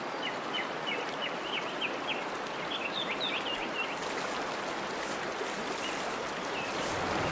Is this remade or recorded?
recorded